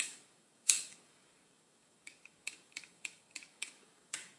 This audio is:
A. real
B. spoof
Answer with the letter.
B